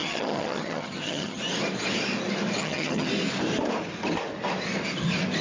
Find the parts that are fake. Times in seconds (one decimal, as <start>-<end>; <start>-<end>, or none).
0.0-1.4; 2.6-3.1